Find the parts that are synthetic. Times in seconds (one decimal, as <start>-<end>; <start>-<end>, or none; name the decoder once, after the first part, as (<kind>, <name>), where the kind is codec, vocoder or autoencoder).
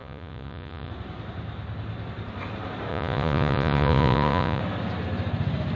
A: 0.0-0.9 (vocoder, Vocos); 2.9-4.6